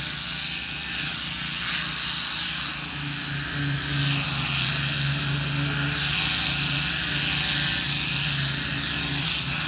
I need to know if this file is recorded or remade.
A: recorded